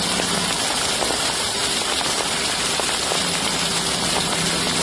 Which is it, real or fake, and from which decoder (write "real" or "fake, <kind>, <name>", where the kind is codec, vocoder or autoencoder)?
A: real